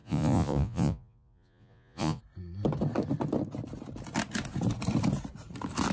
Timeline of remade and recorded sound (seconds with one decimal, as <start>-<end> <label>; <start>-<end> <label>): 0.0-2.2 remade; 2.2-5.9 recorded